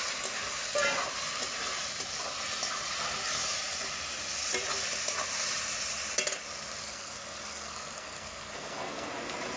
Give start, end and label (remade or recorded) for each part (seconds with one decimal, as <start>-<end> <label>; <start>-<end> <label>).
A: 0.0-6.8 recorded; 6.8-9.1 remade; 9.1-9.6 recorded